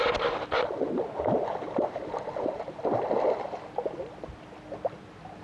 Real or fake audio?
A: real